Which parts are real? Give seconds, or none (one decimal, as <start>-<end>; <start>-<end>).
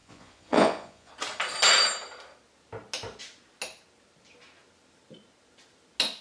1.1-6.2